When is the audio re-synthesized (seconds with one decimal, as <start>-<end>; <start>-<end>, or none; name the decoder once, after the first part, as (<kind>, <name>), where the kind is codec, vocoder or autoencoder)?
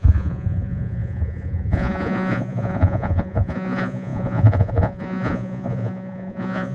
0.0-6.7 (vocoder, Vocos)